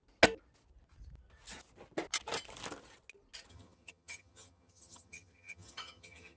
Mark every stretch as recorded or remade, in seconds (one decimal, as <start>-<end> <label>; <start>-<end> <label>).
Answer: 0.0-3.5 recorded; 3.5-6.4 remade